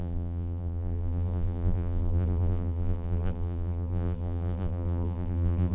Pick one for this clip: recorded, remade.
remade